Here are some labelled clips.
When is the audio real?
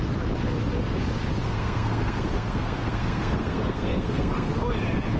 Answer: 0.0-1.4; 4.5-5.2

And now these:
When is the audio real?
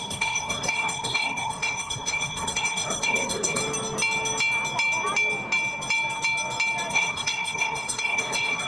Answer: 3.6-6.9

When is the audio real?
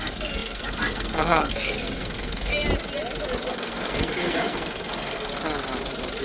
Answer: 2.5-3.5; 5.3-6.2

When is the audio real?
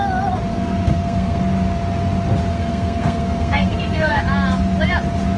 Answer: 0.0-0.5; 1.4-2.5; 4.2-5.4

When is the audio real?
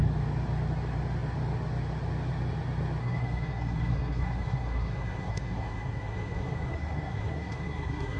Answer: 0.0-3.0